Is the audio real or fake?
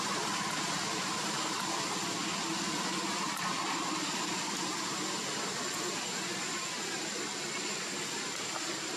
real